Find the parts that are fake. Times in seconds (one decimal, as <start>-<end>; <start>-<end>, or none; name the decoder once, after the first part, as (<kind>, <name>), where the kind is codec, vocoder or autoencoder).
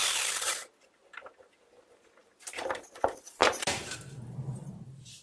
2.2-2.8 (vocoder, BigVGAN v2); 3.4-5.2